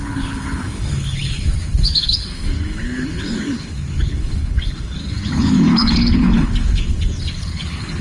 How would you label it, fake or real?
fake